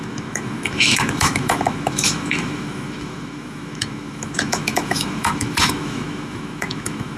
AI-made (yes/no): yes